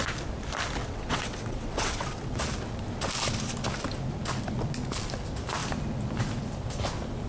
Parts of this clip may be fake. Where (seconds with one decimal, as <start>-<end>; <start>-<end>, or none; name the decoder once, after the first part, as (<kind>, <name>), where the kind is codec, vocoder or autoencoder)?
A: 0.8-2.4 (vocoder, WaveNeXt)

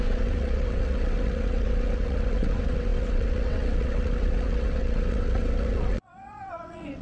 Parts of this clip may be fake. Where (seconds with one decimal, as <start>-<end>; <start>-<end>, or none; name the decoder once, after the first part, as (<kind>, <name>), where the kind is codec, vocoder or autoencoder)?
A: 0.0-7.0 (vocoder, WaveNeXt)